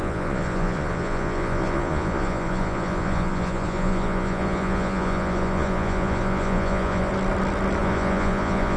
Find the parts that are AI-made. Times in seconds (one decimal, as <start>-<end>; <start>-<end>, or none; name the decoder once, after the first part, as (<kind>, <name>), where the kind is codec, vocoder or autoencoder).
0.0-7.1 (vocoder, Vocos); 7.8-8.8

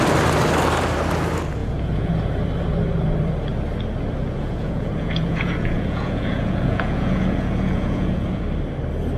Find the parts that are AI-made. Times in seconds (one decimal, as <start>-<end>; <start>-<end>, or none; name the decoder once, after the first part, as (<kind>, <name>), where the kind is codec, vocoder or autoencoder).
1.6-2.1 (vocoder, Vocos); 4.2-8.4

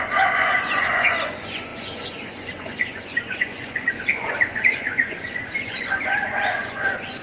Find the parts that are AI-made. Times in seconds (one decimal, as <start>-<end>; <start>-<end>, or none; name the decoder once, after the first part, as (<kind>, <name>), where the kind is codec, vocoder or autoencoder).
0.0-7.2 (vocoder, Vocos)

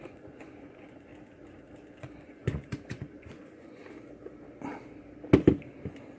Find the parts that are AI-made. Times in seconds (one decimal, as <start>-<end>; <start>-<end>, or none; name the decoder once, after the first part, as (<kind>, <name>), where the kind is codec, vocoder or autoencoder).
0.0-1.1 (vocoder, Vocos); 2.0-3.8